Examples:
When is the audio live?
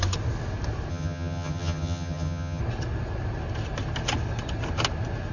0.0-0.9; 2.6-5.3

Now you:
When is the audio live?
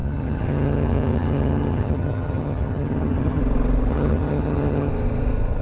3.4-3.9; 4.9-5.6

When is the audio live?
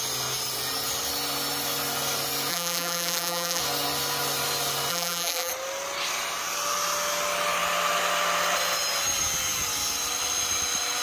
0.0-2.5; 3.6-4.9; 5.5-11.0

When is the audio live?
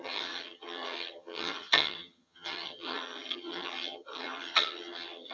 none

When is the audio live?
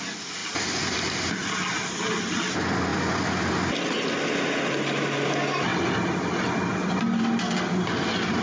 0.0-0.4; 1.5-2.9; 3.5-8.4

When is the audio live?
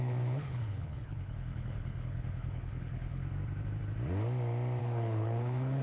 3.2-4.8